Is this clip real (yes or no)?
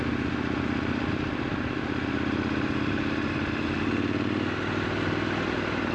yes